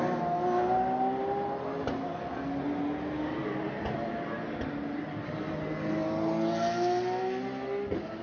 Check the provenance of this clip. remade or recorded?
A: recorded